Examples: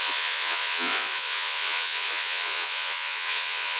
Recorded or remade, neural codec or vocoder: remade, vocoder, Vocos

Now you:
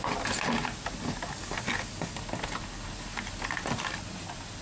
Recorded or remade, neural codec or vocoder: recorded